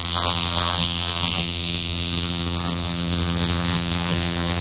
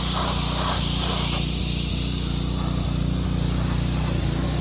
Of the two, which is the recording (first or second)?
second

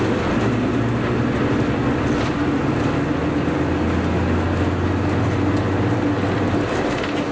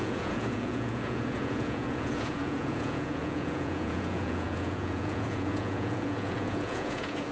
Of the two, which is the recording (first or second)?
first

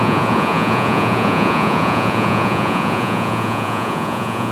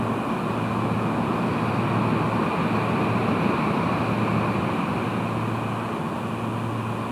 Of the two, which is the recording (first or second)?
second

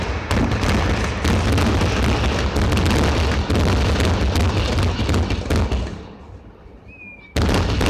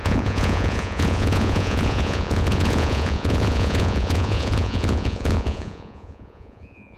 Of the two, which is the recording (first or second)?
first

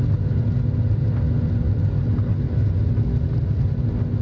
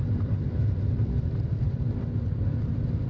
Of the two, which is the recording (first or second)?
first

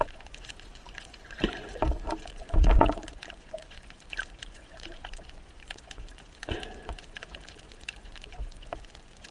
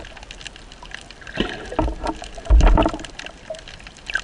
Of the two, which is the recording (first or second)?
second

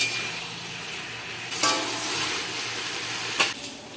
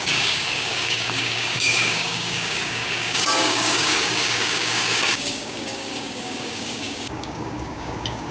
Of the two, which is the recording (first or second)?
first